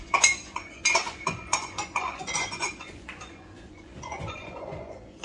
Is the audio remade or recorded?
remade